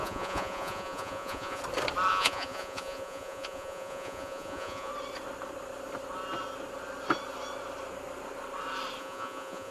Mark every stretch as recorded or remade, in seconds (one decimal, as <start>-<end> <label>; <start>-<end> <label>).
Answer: 0.0-1.6 remade; 1.6-2.1 recorded; 2.1-4.9 remade; 4.9-9.0 recorded; 9.0-9.7 remade